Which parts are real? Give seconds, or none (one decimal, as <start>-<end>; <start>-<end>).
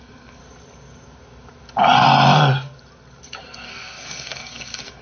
0.4-3.4